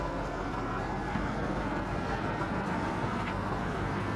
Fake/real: fake